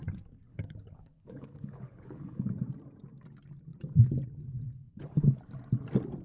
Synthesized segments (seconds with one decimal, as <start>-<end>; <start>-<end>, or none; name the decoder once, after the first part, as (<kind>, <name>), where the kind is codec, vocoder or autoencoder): 0.5-2.5 (codec, HILCodec); 4.8-5.4